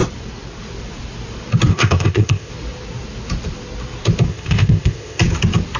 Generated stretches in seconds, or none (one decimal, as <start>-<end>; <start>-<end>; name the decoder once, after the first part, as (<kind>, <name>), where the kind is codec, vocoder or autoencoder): 1.7-2.5 (codec, ZipCodec); 4.3-5.2

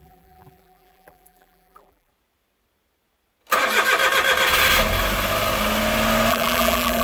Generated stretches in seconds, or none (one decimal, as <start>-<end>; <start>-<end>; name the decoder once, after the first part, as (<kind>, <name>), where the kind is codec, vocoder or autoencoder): 0.0-2.1 (vocoder, BigVGAN v2); 6.3-7.0

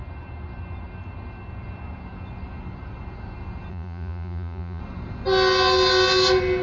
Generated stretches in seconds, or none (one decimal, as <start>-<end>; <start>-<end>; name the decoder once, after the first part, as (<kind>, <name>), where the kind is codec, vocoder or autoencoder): 3.7-4.8 (vocoder, Vocos)